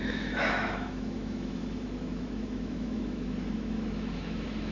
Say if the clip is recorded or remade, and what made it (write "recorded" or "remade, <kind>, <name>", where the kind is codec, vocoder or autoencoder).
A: remade, autoencoder, DAC-VAE